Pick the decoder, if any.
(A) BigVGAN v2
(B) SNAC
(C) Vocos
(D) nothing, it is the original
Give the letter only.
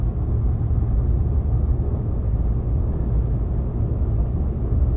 D